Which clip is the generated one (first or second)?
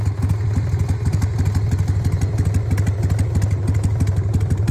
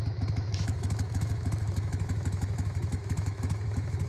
second